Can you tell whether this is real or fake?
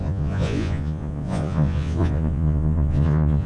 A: fake